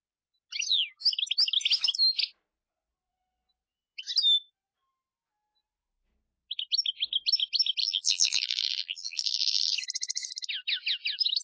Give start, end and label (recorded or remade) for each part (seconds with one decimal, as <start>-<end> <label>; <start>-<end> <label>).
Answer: 0.0-7.8 recorded; 7.8-9.7 remade; 9.7-11.4 recorded